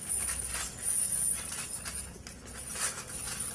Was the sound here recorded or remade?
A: recorded